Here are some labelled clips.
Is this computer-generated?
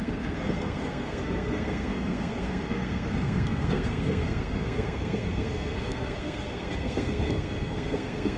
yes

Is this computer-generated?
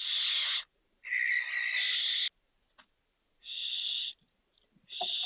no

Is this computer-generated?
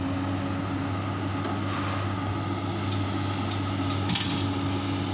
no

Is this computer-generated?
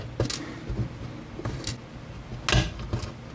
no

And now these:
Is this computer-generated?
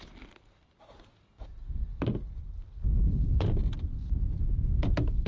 no